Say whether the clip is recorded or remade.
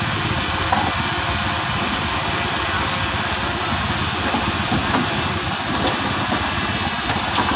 recorded